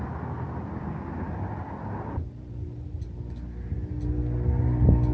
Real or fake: real